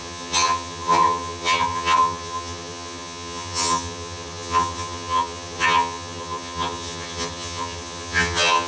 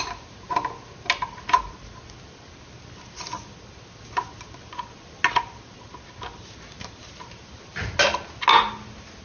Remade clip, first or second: first